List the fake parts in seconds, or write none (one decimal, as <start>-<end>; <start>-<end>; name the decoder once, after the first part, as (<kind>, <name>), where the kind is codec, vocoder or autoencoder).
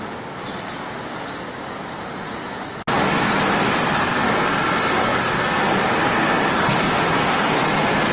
none